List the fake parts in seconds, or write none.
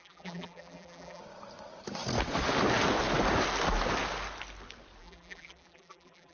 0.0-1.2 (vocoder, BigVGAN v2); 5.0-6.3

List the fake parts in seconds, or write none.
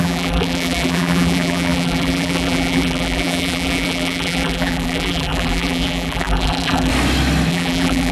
0.0-6.9 (vocoder, BigVGAN v2); 7.5-8.1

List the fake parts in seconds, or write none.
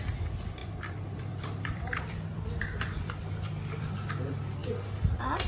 0.6-3.9 (vocoder, BigVGAN v2)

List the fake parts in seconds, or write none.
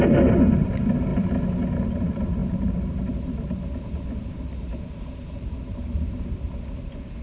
0.0-1.1 (vocoder, BigVGAN v2); 1.7-7.2